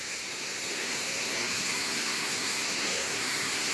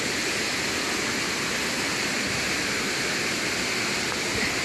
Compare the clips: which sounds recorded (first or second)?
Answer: second